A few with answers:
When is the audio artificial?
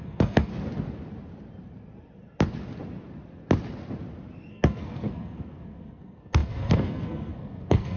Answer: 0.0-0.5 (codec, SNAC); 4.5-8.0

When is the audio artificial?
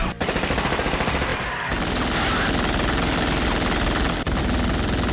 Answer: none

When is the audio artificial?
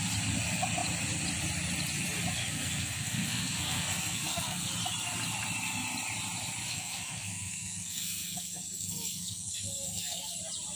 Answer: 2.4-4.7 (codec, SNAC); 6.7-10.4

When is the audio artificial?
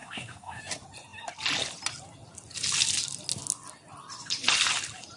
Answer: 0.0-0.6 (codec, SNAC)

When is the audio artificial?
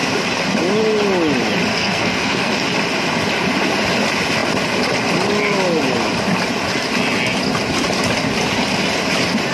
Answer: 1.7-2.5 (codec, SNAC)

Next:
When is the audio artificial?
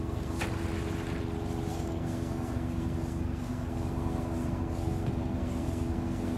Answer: 0.0-0.4 (codec, SNAC); 1.7-6.4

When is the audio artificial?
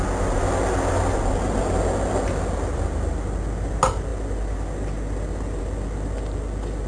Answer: none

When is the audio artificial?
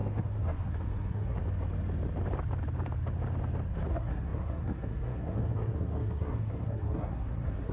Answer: 0.0-1.4 (codec, SNAC); 3.9-7.7